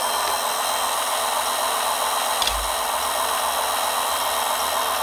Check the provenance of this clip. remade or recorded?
recorded